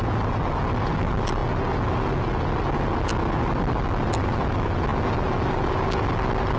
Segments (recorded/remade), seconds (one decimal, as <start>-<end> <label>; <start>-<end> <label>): 0.0-6.6 recorded